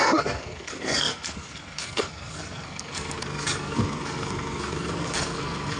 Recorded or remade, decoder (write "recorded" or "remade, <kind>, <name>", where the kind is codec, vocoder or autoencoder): remade, codec, SNAC